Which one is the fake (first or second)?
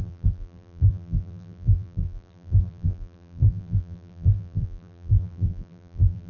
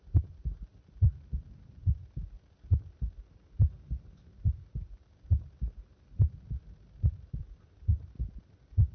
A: first